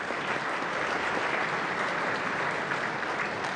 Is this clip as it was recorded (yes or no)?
no